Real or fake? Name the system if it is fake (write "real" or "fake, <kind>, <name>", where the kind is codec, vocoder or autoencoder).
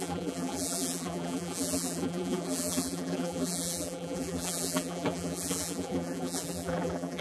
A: fake, vocoder, BigVGAN v2